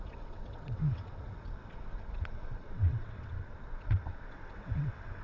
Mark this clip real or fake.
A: fake